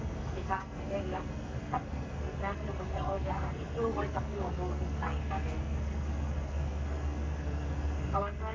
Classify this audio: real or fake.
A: fake